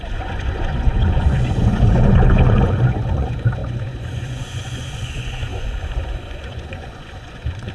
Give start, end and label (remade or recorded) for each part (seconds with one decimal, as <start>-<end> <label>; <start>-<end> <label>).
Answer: 0.0-7.7 remade